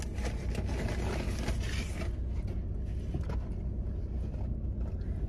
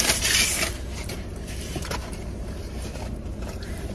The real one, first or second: first